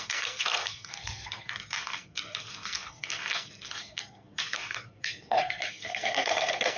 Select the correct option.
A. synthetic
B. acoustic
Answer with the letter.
A